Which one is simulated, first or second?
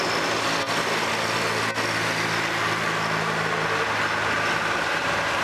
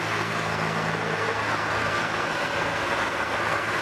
second